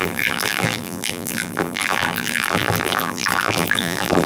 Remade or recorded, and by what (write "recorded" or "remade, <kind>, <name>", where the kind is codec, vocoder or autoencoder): remade, vocoder, BigVGAN v2